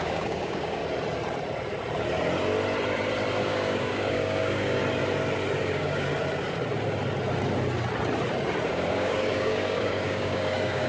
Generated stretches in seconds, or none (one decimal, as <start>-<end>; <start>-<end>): 0.0-0.8; 3.4-4.8; 5.6-6.1; 8.7-10.9